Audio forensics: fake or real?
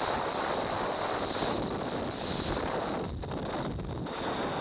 real